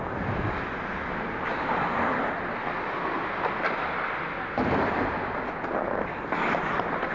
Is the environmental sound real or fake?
real